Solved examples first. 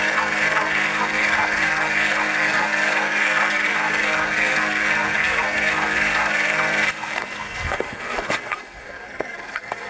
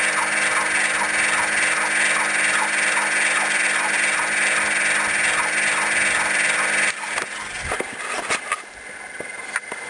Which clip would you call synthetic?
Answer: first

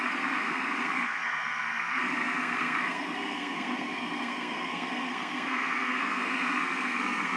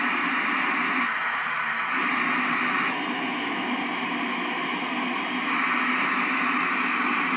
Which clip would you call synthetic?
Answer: first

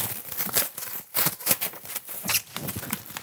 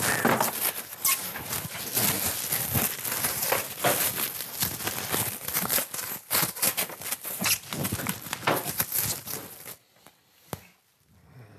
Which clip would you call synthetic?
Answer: first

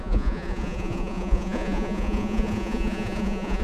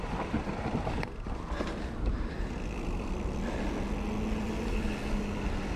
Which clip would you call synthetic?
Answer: first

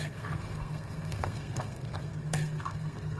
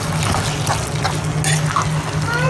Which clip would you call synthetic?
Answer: first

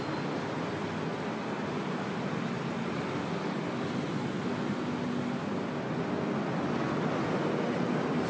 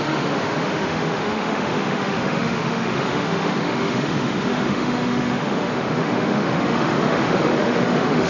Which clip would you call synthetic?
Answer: second